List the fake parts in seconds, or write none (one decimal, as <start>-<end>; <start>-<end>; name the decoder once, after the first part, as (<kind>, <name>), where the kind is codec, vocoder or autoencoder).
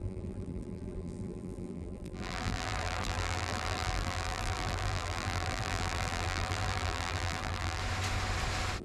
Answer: 0.0-7.8 (vocoder, BigVGAN v2)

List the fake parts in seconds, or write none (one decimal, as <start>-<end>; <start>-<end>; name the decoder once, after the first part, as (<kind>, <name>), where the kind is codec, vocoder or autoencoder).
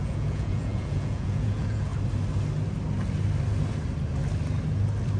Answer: 0.0-1.9 (vocoder, Vocos)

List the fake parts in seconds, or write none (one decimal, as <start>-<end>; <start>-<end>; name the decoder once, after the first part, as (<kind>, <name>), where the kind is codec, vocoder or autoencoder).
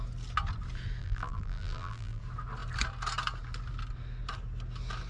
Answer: 1.0-2.2 (vocoder, BigVGAN v2)